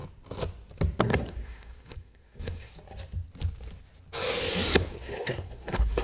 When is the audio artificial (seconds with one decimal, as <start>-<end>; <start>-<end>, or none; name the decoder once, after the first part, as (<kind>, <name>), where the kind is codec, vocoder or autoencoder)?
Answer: 1.0-2.7 (codec, SNAC); 4.9-6.0